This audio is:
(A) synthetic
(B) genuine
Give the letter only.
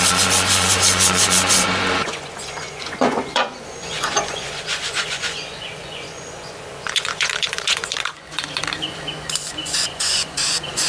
A